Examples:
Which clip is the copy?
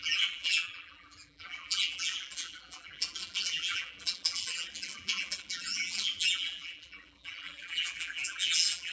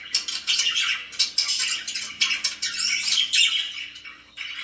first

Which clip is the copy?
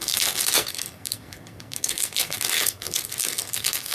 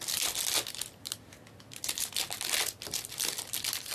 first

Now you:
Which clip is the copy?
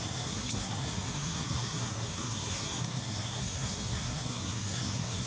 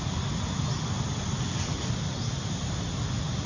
first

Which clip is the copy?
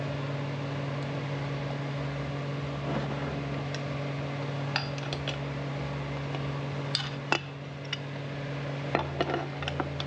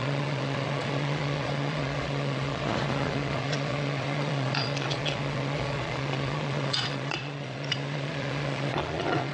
second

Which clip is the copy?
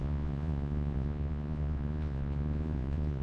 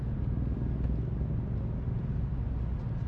first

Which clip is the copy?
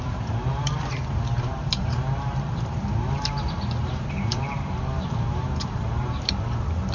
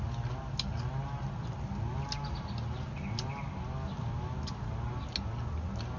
first